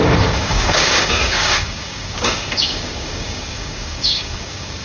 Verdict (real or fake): fake